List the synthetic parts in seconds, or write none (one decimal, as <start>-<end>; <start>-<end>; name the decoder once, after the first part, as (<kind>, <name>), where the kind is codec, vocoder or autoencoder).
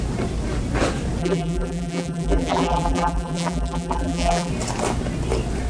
1.2-4.5 (vocoder, BigVGAN v2)